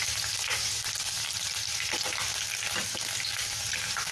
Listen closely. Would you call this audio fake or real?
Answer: real